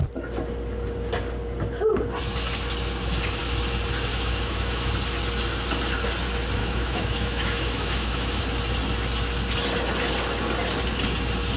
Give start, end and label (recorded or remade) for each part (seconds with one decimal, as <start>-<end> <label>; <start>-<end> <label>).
0.0-4.1 recorded; 4.1-4.9 remade; 4.9-6.6 recorded; 6.6-8.4 remade; 8.4-11.6 recorded